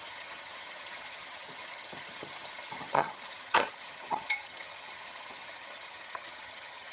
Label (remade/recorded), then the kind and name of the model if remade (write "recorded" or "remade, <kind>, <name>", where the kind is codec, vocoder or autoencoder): remade, vocoder, HiFi-GAN